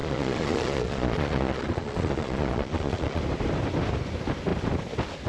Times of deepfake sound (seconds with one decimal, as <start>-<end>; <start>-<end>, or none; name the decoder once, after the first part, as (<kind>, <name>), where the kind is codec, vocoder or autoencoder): 0.0-3.2 (vocoder, Vocos)